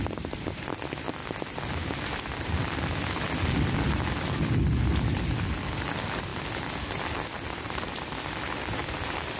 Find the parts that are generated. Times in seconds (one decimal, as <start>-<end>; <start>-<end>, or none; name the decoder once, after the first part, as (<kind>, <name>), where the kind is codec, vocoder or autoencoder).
none